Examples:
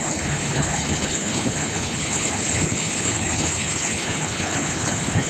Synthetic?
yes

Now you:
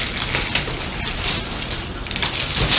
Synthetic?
no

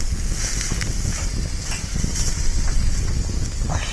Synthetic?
no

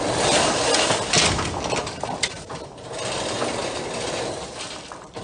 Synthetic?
no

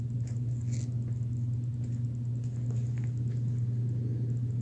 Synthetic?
no